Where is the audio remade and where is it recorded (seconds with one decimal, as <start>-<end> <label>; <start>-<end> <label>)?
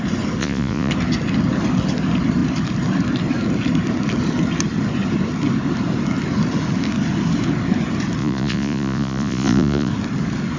0.0-0.4 recorded; 0.4-0.9 remade; 0.9-8.2 recorded; 8.2-9.9 remade; 9.9-10.6 recorded